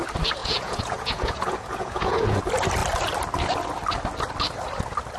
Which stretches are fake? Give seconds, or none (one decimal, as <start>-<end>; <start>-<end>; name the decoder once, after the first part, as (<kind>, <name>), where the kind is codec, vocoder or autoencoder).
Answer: 0.4-2.4 (vocoder, Vocos)